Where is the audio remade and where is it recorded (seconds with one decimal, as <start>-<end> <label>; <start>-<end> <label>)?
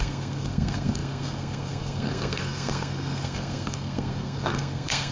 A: 0.0-5.1 remade